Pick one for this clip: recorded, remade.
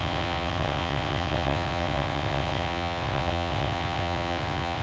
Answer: remade